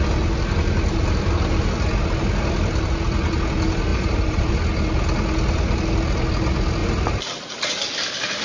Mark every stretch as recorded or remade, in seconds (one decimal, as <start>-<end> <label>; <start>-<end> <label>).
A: 0.0-3.9 recorded; 3.9-4.5 remade; 4.5-6.8 recorded; 6.8-7.9 remade; 7.9-8.4 recorded